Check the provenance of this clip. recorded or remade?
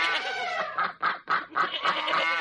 remade